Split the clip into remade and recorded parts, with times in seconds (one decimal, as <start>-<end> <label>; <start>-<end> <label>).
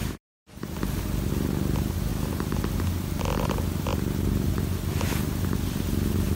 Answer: 0.0-1.3 remade; 1.3-3.9 recorded; 3.9-4.6 remade; 4.6-6.4 recorded